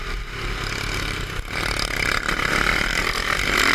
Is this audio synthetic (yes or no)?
no